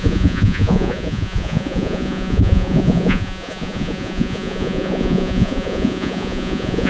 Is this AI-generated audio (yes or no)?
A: yes